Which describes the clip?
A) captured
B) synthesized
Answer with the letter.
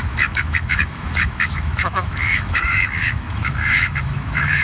B